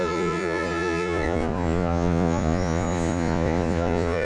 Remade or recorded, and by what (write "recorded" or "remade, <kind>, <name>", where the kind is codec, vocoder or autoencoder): remade, vocoder, Vocos